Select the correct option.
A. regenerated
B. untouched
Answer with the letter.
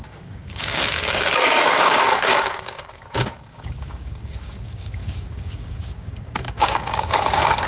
A